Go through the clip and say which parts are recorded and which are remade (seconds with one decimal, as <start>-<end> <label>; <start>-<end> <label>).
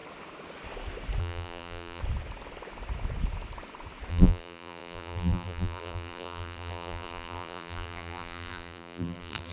0.0-1.2 recorded; 1.2-2.0 remade; 2.0-4.1 recorded; 4.1-9.5 remade